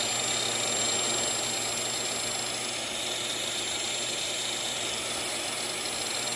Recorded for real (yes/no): yes